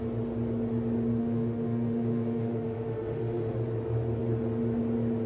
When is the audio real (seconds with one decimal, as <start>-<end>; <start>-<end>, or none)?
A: 0.0-1.2; 3.5-5.3